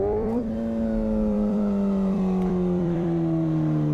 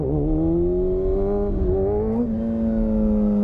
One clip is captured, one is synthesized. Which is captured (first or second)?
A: second